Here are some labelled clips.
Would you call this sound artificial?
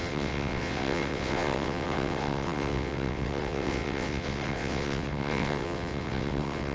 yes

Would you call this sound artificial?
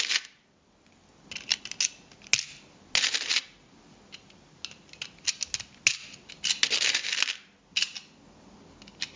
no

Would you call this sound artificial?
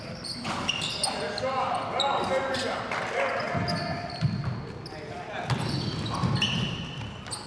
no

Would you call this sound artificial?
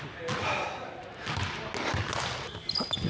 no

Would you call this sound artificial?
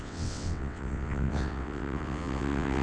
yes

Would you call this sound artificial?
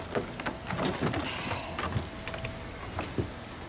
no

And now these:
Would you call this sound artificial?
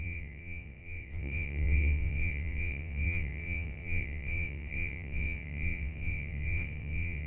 yes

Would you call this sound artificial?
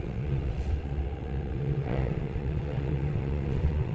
yes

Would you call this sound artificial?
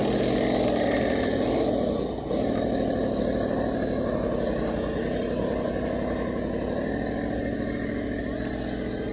no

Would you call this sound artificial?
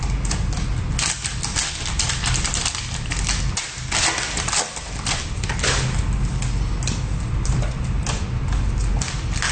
no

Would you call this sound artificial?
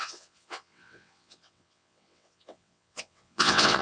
yes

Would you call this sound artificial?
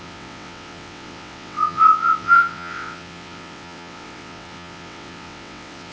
yes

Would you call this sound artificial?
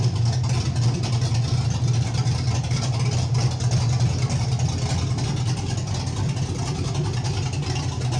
no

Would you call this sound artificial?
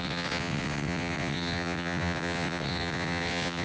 yes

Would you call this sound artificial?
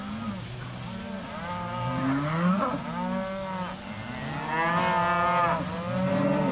no